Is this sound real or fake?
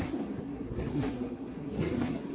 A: fake